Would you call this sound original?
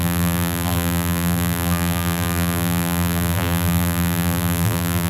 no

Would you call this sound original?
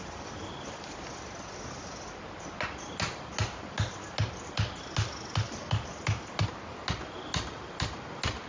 yes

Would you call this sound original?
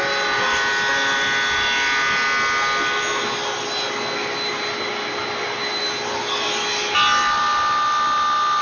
yes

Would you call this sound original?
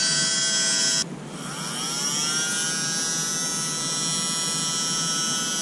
yes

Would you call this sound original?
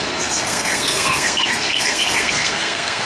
no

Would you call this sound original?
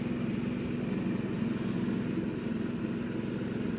yes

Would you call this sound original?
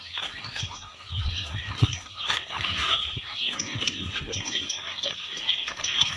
no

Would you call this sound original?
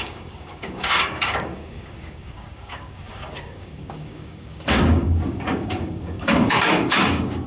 no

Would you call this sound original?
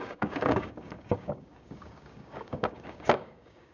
no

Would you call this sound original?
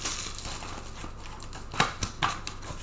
yes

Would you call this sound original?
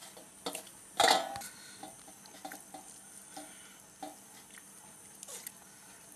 yes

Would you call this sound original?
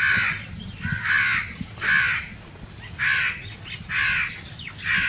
yes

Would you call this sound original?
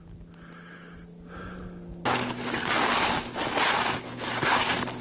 yes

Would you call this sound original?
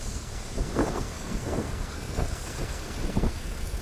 no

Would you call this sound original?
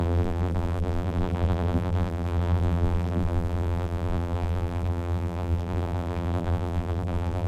no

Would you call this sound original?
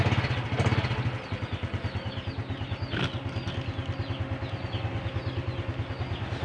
yes